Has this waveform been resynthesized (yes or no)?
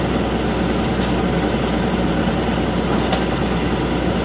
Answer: no